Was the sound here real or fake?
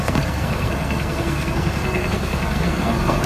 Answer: fake